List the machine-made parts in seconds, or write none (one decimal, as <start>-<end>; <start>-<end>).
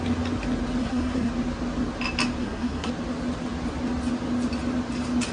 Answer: 0.8-1.3; 2.4-2.9